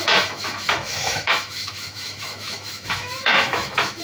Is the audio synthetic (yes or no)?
yes